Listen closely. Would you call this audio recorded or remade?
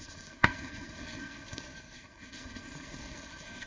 remade